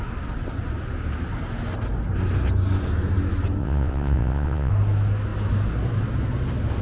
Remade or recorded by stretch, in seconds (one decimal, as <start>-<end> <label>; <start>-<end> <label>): 0.0-3.6 recorded; 3.6-4.7 remade; 4.7-6.8 recorded